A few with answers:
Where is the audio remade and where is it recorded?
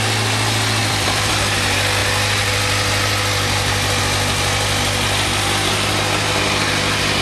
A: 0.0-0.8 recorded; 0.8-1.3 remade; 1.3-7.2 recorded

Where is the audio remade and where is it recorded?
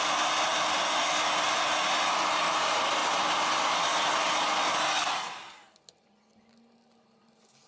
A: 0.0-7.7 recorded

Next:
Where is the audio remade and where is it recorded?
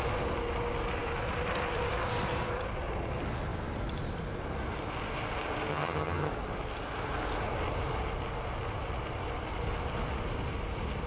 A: 0.0-5.7 recorded; 5.7-6.3 remade; 6.3-11.1 recorded